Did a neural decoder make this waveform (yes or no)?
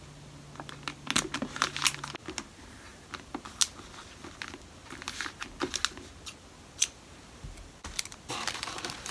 no